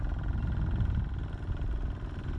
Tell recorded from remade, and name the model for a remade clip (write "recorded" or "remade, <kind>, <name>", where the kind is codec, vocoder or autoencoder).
recorded